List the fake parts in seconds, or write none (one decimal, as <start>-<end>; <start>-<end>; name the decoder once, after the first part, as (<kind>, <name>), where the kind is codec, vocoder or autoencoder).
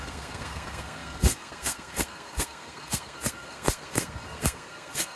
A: 0.0-5.2 (codec, SNAC)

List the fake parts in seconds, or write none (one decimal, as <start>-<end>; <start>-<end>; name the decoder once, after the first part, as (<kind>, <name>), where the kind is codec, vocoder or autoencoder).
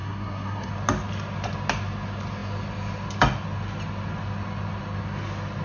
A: 0.0-0.7 (codec, SNAC)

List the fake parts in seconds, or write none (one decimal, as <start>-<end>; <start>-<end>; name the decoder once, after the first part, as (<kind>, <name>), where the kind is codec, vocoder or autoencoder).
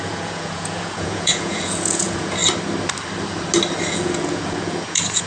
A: 0.0-2.4 (vocoder, Vocos); 3.9-5.3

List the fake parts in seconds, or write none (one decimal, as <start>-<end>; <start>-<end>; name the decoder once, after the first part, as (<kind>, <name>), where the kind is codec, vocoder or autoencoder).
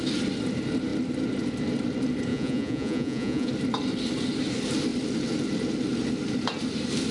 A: 2.3-3.5 (vocoder, Vocos)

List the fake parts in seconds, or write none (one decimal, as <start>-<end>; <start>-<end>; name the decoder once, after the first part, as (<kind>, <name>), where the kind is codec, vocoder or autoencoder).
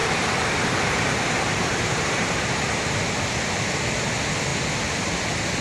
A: 0.0-3.1 (vocoder, BigVGAN v2)